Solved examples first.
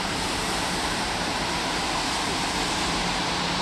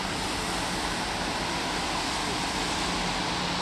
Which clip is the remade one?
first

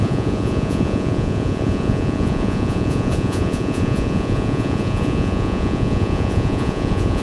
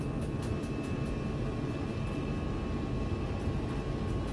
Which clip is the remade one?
first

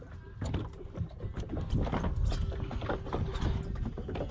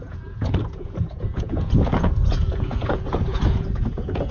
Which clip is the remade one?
second